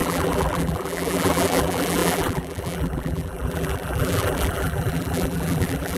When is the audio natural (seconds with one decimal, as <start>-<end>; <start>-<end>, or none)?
none